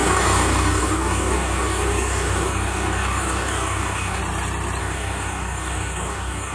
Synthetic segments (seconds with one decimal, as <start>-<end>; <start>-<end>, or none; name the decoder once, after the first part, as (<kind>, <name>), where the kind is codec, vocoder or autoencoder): 0.0-4.2 (codec, DAC); 4.8-6.5